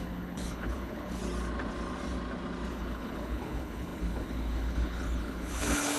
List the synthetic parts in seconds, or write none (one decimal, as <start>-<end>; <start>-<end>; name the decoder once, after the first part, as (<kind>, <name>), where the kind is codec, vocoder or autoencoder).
0.0-1.2 (codec, HILCodec); 2.7-6.0